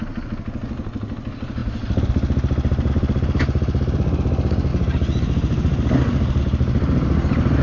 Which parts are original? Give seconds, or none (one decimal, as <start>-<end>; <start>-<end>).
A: 0.0-4.7; 6.4-7.6